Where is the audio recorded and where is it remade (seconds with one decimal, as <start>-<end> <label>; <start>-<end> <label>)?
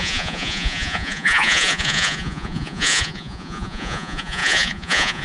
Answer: 0.0-5.2 remade